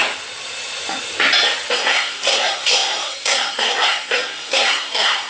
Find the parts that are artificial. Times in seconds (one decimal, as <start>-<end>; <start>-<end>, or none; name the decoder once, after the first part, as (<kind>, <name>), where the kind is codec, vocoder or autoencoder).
1.7-5.3 (codec, SNAC)